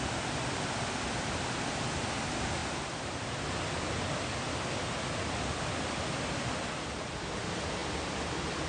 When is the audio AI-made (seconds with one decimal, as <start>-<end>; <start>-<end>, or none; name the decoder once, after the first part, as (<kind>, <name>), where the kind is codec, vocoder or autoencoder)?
0.0-8.7 (vocoder, BigVGAN v2)